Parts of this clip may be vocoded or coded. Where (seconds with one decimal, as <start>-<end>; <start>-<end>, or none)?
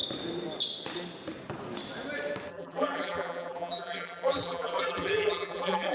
2.5-5.9